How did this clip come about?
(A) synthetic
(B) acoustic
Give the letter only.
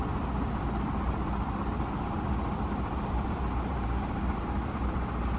B